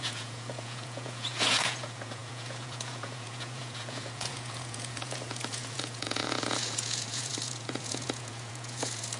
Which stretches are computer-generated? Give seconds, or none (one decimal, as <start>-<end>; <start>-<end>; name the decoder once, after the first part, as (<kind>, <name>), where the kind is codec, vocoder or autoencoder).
0.0-9.2 (vocoder, Vocos)